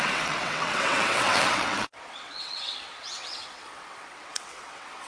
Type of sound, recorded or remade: remade